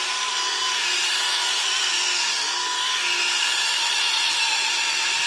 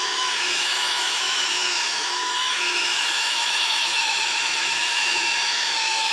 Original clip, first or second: first